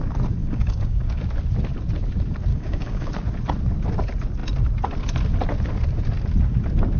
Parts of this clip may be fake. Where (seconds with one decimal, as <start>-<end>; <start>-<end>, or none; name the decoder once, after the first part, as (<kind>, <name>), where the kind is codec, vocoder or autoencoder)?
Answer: 0.4-1.2 (codec, DAC); 2.5-3.1